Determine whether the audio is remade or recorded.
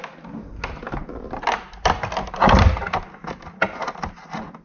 recorded